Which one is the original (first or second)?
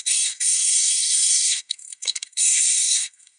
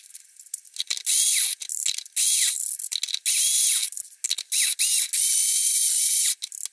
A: second